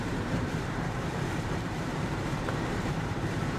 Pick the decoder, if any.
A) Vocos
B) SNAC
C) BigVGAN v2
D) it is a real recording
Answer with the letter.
C